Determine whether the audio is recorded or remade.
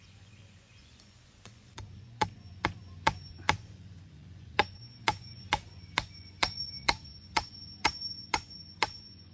remade